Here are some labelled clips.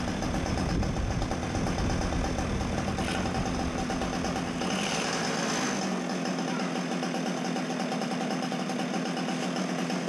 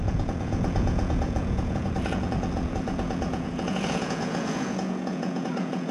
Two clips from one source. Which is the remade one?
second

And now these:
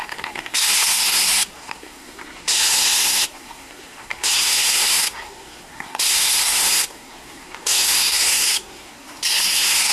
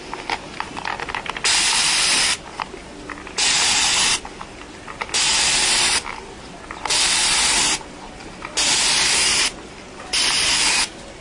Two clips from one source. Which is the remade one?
first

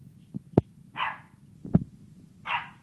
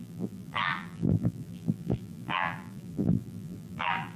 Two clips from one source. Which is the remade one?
second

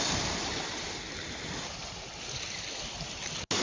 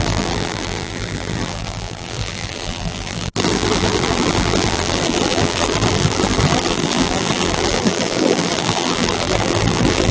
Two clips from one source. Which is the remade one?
second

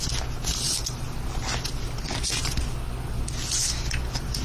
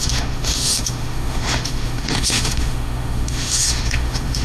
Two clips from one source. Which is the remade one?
second